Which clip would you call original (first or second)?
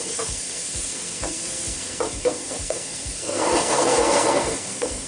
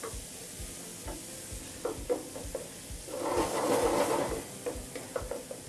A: second